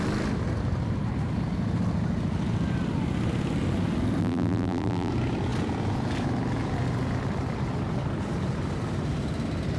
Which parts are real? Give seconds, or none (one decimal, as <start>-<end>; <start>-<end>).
0.0-4.2; 5.1-9.8